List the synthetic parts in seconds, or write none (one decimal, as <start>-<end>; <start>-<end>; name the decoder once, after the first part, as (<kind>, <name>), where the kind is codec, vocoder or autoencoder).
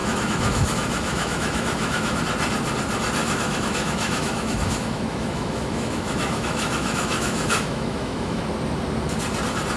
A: 0.0-2.2 (autoencoder, DAC-VAE); 3.2-8.4